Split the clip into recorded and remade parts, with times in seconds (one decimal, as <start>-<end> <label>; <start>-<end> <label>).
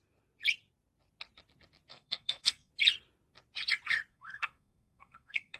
0.0-1.9 recorded; 1.9-2.7 remade; 2.7-4.1 recorded; 4.1-5.6 remade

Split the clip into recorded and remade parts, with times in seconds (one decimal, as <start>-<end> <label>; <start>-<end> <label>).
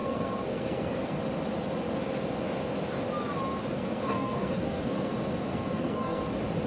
0.0-1.2 remade; 1.2-3.7 recorded; 3.7-5.1 remade; 5.1-5.5 recorded; 5.5-6.2 remade; 6.2-6.7 recorded